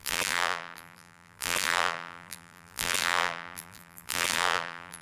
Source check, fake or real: fake